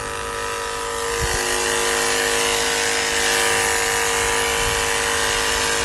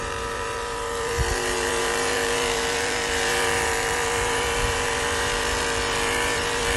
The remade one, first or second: second